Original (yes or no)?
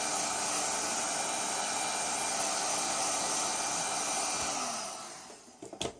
yes